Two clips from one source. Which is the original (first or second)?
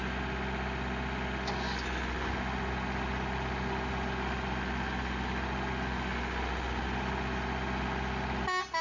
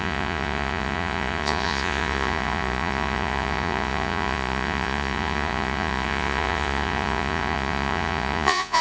first